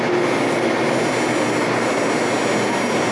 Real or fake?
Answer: real